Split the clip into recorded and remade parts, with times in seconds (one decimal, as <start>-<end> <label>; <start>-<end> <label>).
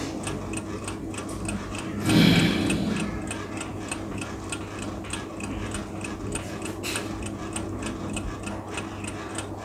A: 0.0-9.6 recorded